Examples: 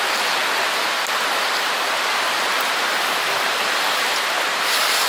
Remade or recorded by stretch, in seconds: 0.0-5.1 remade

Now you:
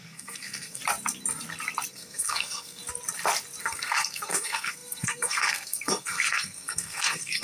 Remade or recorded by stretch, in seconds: 0.0-0.8 remade; 0.8-1.9 recorded; 1.9-2.8 remade; 2.8-3.6 recorded; 3.6-7.4 remade

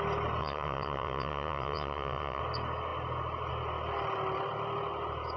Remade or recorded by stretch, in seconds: 0.0-0.4 recorded; 0.4-2.4 remade; 2.4-5.4 recorded